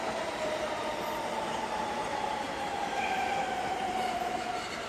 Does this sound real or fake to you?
fake